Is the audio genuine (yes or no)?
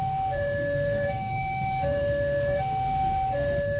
no